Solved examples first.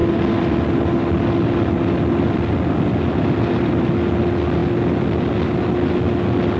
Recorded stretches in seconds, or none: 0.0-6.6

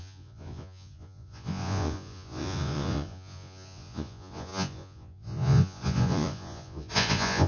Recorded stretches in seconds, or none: none

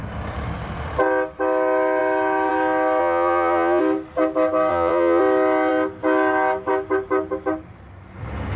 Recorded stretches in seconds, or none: 0.0-3.0; 3.8-4.7; 5.2-8.6

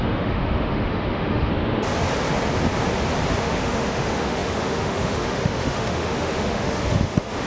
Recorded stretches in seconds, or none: 1.5-3.4